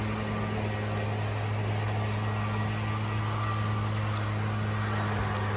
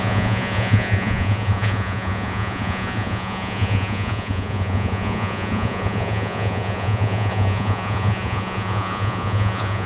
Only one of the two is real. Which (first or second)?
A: first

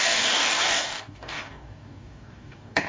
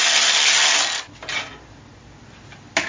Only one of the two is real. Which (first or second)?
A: second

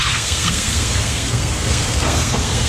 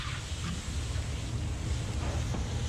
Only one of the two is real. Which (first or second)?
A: second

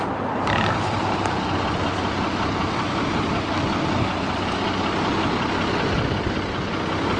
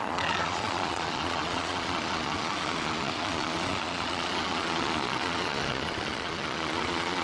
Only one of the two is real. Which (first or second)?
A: first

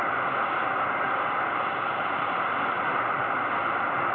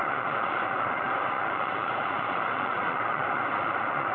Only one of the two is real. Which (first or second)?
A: first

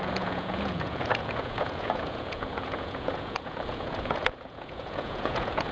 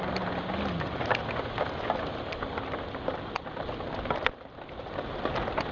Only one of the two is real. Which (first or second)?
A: second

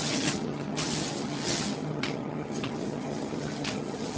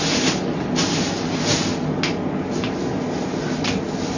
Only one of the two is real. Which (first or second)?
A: second